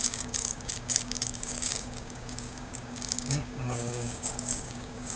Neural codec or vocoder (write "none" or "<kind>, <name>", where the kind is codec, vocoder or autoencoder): codec, DAC